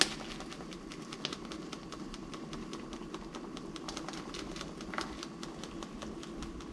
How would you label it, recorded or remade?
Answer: recorded